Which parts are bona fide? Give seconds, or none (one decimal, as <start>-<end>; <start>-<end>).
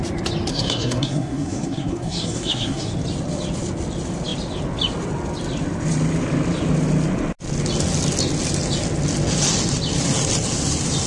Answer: 0.0-0.5; 2.9-11.1